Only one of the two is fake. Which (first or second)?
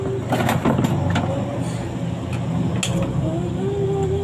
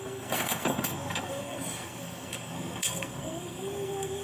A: second